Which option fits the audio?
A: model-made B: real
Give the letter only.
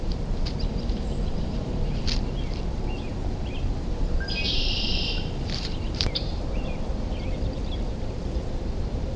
A